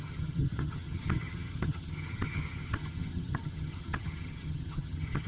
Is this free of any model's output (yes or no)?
no